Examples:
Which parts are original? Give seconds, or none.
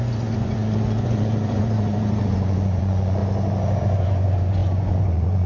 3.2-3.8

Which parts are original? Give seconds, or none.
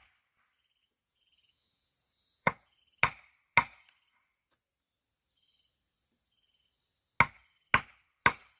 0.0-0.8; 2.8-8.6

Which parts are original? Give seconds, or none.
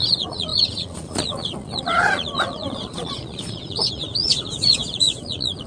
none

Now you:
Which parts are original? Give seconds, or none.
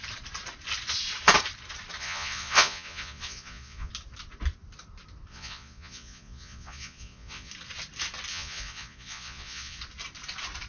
0.0-2.0; 3.9-5.3; 7.5-8.3; 9.8-10.7